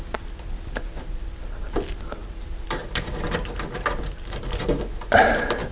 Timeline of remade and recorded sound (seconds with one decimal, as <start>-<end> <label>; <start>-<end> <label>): 0.0-5.7 recorded